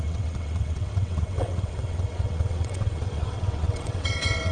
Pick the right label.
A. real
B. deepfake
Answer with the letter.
B